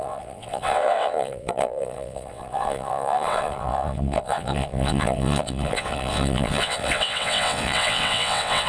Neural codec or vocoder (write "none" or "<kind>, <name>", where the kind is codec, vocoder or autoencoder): vocoder, WaveNeXt